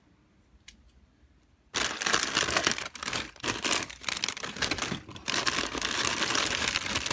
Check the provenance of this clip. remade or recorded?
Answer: remade